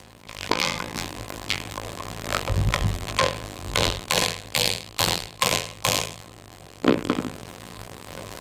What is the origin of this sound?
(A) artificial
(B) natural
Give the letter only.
A